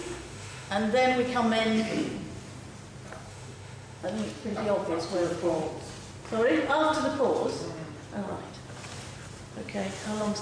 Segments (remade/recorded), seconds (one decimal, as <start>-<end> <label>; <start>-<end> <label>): 0.0-0.7 remade; 0.7-3.3 recorded; 3.3-4.0 remade; 4.0-10.4 recorded